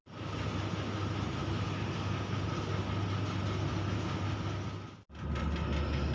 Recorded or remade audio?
recorded